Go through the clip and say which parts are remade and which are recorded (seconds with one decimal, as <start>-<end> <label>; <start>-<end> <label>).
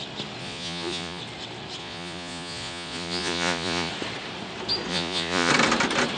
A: 0.0-0.4 recorded; 0.4-1.2 remade; 1.2-1.8 recorded; 1.8-3.9 remade; 3.9-4.9 recorded; 4.9-5.5 remade; 5.5-6.2 recorded